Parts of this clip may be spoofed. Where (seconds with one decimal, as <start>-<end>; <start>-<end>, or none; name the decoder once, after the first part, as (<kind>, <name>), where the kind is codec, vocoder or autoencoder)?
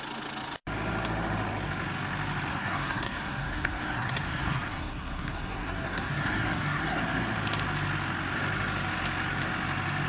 2.5-7.0 (codec, SNAC)